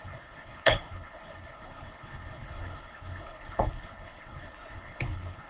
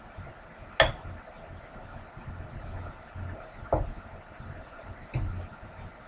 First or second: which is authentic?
second